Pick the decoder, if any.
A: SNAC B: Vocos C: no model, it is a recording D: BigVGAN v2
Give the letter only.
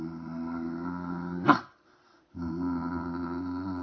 C